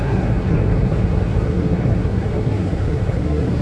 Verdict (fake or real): fake